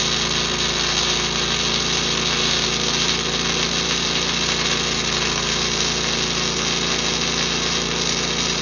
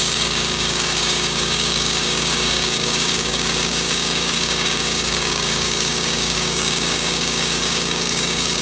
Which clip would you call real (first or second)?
first